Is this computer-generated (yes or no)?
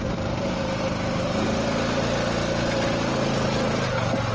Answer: no